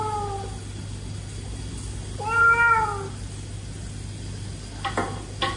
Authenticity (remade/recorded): recorded